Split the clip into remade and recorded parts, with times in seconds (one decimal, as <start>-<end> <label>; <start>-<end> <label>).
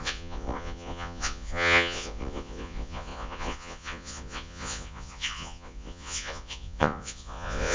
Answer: 0.0-7.7 remade